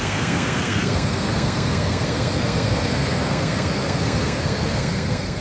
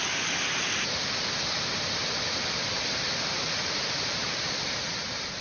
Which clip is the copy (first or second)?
first